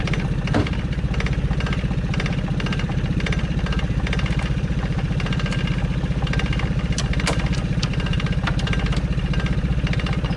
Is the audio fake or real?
real